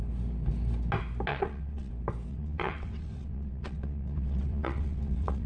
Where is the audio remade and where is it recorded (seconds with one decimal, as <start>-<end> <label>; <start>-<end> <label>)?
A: 0.0-1.3 recorded; 1.3-1.9 remade; 1.9-2.3 recorded; 2.3-5.5 remade